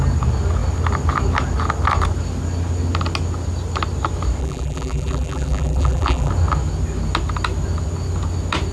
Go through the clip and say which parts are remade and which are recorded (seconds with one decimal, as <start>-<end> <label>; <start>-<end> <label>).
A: 0.0-4.4 recorded; 4.4-6.3 remade; 6.3-8.7 recorded